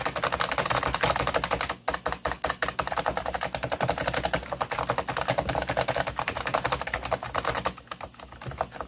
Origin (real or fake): real